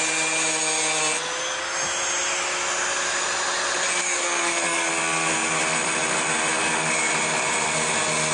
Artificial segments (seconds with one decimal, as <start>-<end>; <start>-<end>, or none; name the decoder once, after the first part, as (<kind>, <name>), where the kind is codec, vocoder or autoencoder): 4.0-4.9 (codec, DAC); 6.6-7.1